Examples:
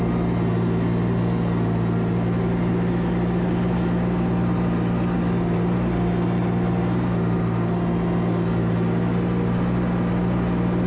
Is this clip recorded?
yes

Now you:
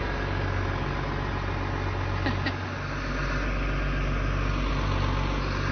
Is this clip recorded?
yes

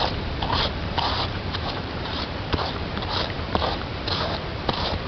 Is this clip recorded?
no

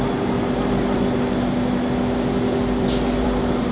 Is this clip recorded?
no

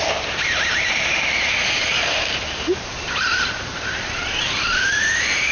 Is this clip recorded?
no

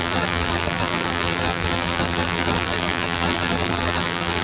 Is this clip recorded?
no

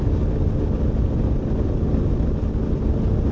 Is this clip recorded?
yes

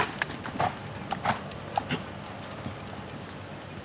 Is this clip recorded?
yes